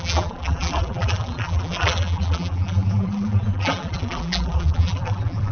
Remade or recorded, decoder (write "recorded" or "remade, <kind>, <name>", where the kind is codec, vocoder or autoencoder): remade, vocoder, BigVGAN v2